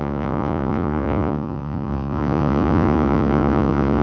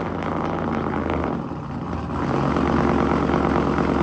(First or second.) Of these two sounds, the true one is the second